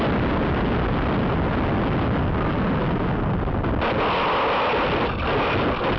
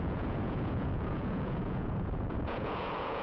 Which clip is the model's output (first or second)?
second